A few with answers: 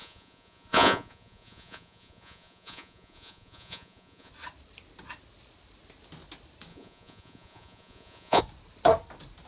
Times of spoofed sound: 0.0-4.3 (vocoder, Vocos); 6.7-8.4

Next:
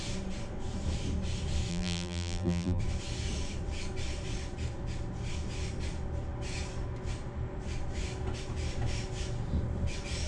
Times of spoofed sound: 1.7-2.8 (vocoder, BigVGAN v2)

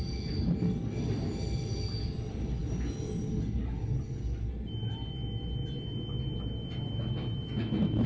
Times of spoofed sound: none

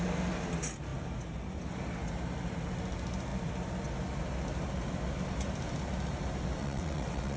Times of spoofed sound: 6.6-7.4 (vocoder, WaveNeXt)

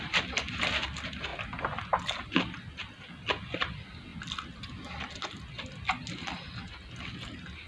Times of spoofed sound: none

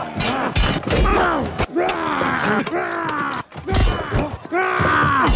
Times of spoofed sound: none